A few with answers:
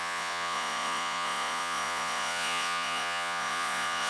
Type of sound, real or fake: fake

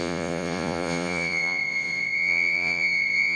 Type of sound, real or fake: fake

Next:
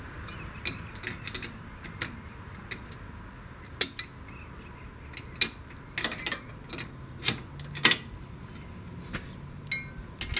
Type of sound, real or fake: real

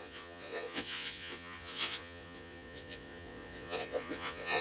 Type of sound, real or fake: fake